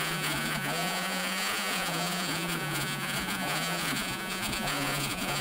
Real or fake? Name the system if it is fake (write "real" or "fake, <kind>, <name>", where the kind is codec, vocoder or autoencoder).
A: fake, vocoder, Vocos